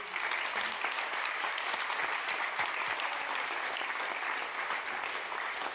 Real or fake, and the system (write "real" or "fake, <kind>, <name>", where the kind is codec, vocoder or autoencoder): real